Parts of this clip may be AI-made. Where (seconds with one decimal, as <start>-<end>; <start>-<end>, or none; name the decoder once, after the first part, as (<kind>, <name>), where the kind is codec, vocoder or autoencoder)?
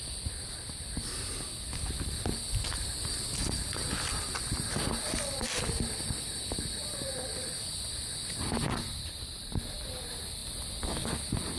10.4-11.2 (vocoder, BigVGAN v2)